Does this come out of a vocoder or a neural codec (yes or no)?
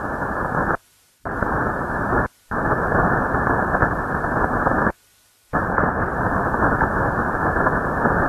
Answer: no